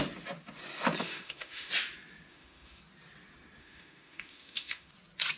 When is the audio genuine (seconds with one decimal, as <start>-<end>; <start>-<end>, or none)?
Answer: 0.0-1.0; 1.7-2.3; 2.8-3.6; 4.9-5.4

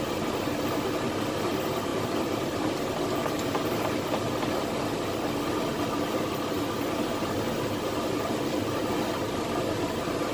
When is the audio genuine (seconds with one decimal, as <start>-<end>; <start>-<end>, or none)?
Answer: 0.0-10.3

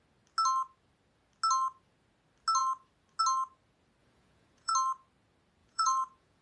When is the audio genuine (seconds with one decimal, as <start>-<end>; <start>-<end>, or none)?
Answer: 0.0-4.0; 4.7-5.6

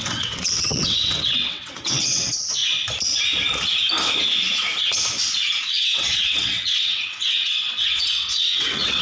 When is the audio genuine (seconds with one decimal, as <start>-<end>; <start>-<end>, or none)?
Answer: 2.6-5.6

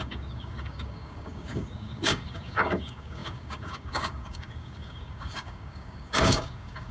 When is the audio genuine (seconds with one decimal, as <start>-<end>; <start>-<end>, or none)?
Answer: none

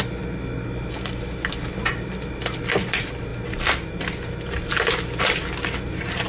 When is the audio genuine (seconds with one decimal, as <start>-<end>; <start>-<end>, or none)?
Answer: 0.0-6.3

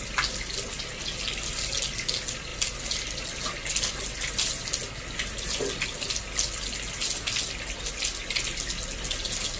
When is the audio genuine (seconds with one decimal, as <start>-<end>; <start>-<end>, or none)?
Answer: 0.0-9.6